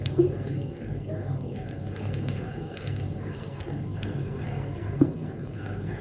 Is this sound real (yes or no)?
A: no